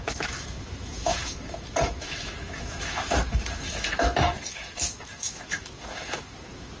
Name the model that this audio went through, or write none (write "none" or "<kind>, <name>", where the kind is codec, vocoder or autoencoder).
autoencoder, DAC-VAE